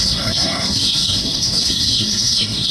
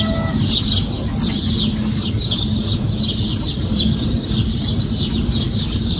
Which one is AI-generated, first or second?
first